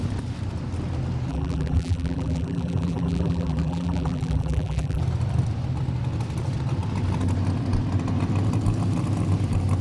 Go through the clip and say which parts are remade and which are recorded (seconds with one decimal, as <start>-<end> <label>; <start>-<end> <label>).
0.0-1.3 recorded; 1.3-5.0 remade; 5.0-9.8 recorded